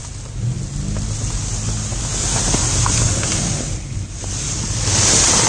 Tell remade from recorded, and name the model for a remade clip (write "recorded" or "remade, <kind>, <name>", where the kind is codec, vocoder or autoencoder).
recorded